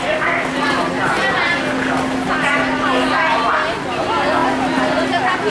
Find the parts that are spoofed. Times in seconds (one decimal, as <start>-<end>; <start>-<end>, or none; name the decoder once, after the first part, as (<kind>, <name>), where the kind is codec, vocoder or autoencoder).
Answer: none